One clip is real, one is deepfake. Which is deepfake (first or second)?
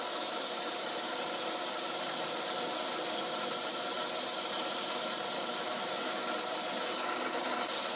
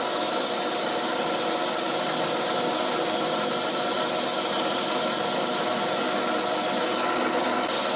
first